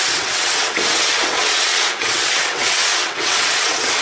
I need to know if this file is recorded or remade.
remade